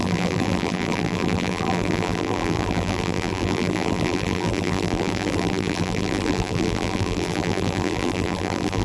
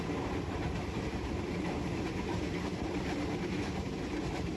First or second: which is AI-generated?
first